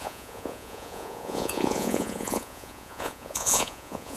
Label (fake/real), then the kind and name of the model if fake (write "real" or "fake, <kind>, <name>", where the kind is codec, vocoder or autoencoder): fake, vocoder, Vocos